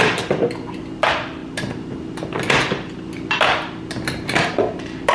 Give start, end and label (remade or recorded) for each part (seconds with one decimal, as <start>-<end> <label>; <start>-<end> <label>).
0.0-5.1 recorded